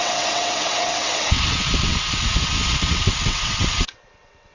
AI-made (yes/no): yes